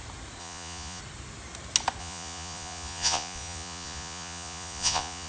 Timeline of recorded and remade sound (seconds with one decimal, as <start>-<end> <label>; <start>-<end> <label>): 0.0-0.4 recorded; 0.4-1.0 remade; 1.0-2.0 recorded; 2.0-5.3 remade